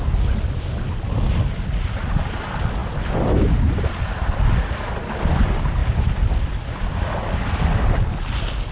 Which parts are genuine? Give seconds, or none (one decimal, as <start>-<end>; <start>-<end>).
0.0-8.7